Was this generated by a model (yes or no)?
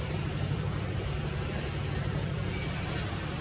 no